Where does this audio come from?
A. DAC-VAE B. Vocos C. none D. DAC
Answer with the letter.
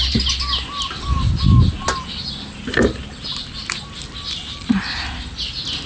C